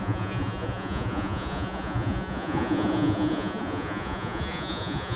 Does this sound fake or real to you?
fake